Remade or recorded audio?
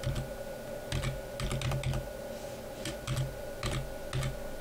recorded